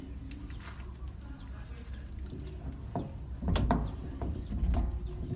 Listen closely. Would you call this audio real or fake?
real